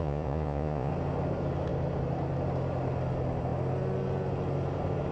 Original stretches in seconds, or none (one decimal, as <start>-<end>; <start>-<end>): 0.9-5.1